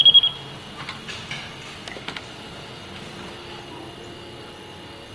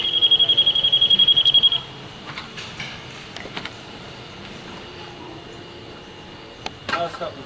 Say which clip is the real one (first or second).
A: first